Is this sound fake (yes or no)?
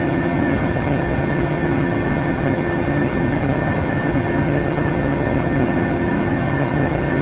yes